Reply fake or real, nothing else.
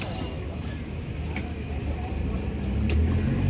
real